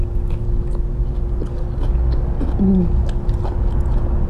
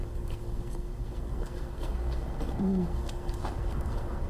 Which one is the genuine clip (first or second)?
first